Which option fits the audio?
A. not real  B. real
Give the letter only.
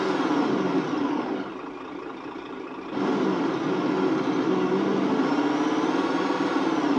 B